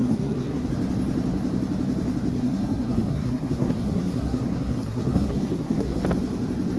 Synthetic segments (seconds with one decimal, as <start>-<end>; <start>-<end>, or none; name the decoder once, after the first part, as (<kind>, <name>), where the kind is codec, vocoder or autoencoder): 0.0-0.7 (codec, SNAC); 2.3-6.0